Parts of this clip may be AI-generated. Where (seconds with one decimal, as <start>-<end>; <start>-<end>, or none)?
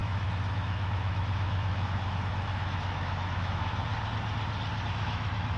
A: 0.0-3.9; 4.9-5.6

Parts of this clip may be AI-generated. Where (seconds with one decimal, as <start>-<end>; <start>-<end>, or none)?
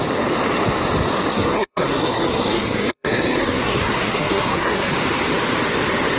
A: 1.3-4.9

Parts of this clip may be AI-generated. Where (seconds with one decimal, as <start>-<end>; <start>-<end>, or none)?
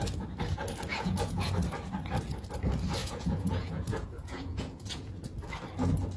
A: 0.9-1.5; 3.0-5.1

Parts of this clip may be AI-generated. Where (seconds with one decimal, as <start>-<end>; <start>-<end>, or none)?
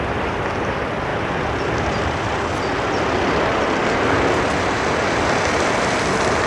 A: none